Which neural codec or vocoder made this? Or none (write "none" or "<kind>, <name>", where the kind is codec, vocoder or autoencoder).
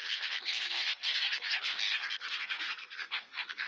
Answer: codec, SNAC